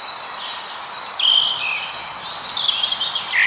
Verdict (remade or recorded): recorded